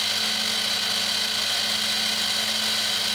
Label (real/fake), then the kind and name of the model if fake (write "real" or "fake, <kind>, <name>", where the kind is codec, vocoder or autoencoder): real